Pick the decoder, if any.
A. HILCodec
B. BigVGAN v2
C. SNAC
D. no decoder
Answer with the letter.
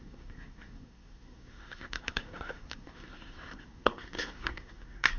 C